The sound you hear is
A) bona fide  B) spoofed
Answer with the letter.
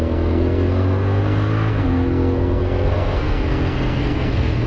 B